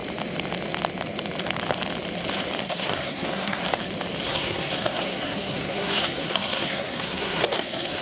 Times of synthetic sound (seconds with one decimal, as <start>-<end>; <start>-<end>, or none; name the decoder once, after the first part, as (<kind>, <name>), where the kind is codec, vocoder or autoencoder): 2.6-3.6 (codec, SNAC); 4.2-8.0